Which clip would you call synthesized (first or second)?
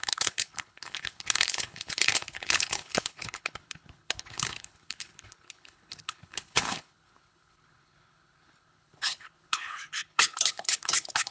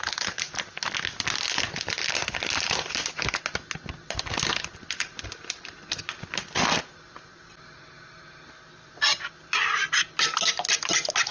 first